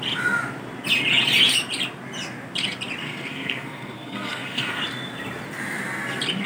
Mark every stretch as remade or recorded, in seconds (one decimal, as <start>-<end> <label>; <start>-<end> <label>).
0.0-3.0 recorded; 3.0-4.8 remade; 4.8-6.5 recorded